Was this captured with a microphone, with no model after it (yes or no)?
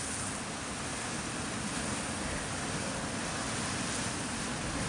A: yes